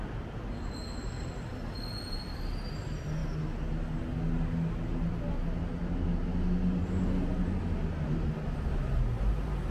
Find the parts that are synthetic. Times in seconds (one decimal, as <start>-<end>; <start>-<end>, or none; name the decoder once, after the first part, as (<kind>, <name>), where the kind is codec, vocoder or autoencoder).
none